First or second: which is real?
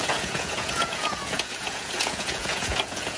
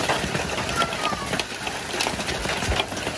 second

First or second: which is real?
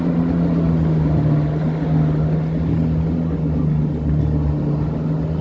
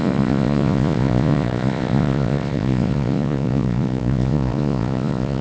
first